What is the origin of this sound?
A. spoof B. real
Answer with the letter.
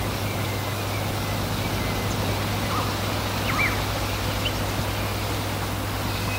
B